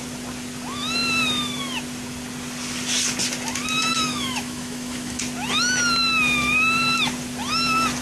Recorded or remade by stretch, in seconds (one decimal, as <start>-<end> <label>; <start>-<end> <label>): 0.0-3.8 recorded; 3.8-5.2 remade; 5.2-8.0 recorded